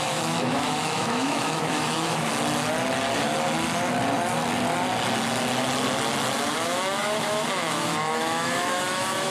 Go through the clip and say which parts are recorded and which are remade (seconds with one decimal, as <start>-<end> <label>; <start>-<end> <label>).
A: 0.0-2.3 remade; 2.3-6.5 recorded; 6.5-9.3 remade